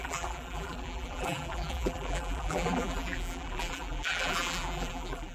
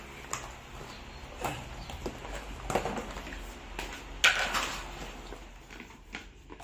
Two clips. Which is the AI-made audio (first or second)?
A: first